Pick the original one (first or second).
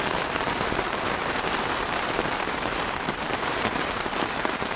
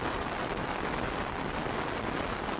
second